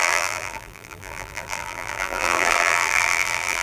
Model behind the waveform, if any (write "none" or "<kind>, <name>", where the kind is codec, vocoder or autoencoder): vocoder, BigVGAN v2